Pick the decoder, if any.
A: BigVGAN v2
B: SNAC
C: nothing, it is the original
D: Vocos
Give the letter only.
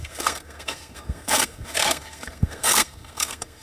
B